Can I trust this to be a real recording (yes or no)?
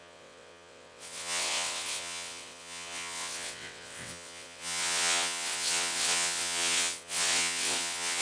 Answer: no